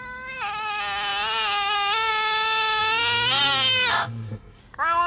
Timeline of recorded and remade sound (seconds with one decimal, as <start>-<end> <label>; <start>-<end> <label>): 0.0-3.9 recorded; 3.9-4.6 remade; 4.6-5.1 recorded